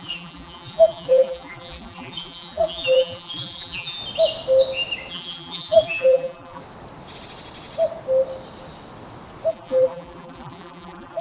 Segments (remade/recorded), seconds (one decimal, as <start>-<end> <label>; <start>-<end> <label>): 0.0-4.0 remade; 4.0-5.1 recorded; 5.1-6.6 remade; 6.6-9.5 recorded; 9.5-11.2 remade